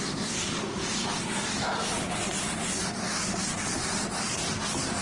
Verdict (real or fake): real